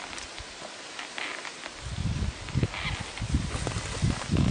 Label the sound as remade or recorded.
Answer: recorded